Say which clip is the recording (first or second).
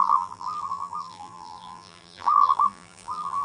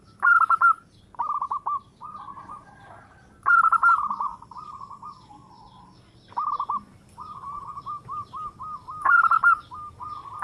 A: second